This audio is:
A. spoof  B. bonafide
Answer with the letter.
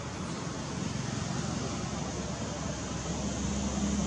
B